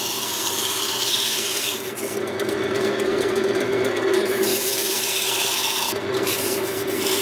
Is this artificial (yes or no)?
yes